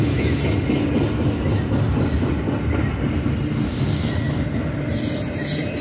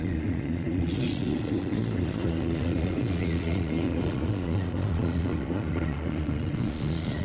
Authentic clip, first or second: first